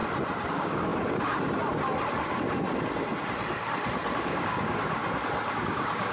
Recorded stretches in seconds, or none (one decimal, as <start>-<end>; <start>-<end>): 0.0-0.5; 0.9-4.2; 5.0-5.5